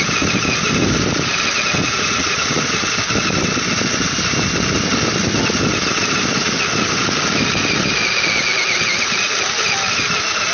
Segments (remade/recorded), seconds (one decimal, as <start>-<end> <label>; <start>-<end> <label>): 0.0-1.9 recorded; 1.9-2.7 remade; 2.7-10.5 recorded